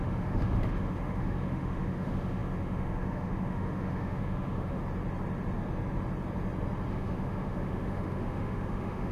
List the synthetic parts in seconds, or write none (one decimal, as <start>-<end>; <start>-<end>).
0.0-4.8; 6.9-9.1